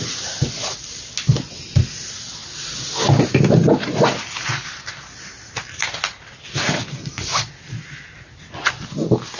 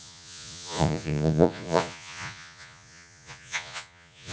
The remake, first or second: second